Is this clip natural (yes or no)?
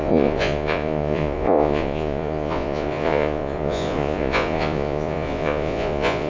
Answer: no